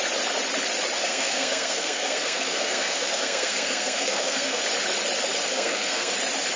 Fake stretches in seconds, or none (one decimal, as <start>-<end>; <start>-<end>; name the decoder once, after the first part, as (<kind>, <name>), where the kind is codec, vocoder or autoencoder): 1.0-4.6 (codec, SNAC); 5.5-6.1